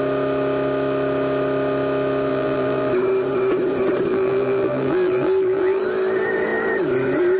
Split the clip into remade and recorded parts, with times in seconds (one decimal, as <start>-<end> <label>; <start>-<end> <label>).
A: 0.0-2.3 recorded; 2.3-2.9 remade; 2.9-4.1 recorded; 4.1-5.8 remade; 5.8-7.4 recorded